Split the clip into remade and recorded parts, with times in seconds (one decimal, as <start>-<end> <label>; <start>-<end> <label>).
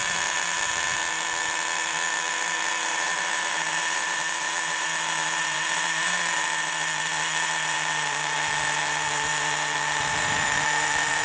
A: 0.0-2.7 recorded; 2.7-11.2 remade